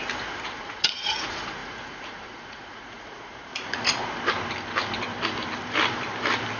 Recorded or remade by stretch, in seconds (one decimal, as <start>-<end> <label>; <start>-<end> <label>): 0.0-0.6 recorded; 0.6-4.0 remade; 4.0-6.6 recorded